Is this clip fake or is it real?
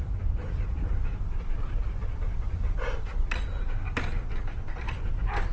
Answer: fake